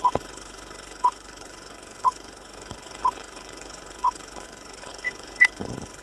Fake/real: fake